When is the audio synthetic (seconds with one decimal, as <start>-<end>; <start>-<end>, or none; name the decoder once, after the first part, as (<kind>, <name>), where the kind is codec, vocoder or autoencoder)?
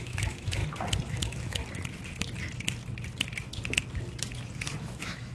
0.0-0.6 (autoencoder, DAC-VAE); 1.1-1.6; 4.8-5.3